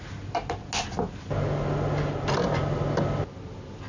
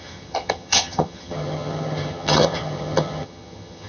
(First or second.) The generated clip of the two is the second